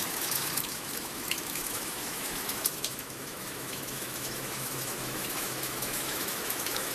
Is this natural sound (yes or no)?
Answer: no